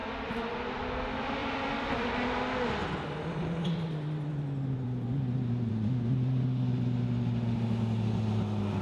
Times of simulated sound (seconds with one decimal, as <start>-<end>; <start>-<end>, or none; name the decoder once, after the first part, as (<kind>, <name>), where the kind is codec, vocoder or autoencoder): 1.4-2.1 (vocoder, BigVGAN v2); 2.8-5.7